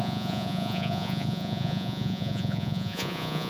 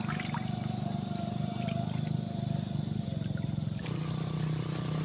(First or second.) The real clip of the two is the second